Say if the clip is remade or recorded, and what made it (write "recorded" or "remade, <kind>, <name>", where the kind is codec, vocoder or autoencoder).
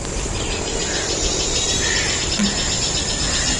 recorded